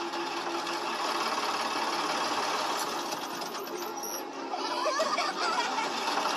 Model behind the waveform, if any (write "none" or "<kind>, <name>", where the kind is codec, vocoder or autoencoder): none